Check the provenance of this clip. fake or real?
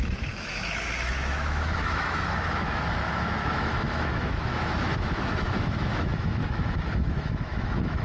fake